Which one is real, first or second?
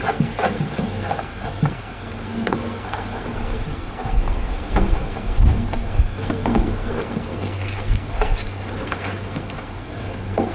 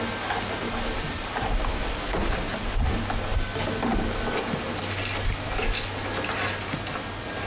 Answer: second